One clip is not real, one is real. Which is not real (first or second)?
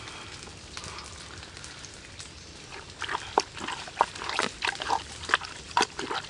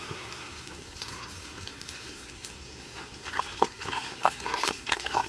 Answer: second